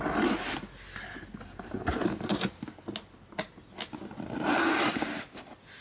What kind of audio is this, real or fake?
real